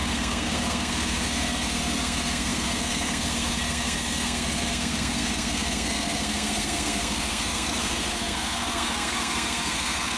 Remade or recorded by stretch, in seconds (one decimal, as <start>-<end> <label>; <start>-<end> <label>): 0.0-10.2 remade